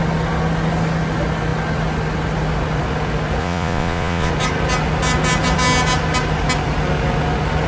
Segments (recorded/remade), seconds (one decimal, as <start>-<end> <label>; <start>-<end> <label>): 0.0-3.4 recorded; 3.4-4.3 remade; 4.3-7.7 recorded